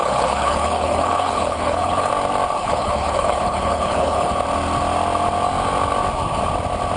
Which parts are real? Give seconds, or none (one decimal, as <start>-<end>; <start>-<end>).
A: 2.1-2.6; 4.3-7.0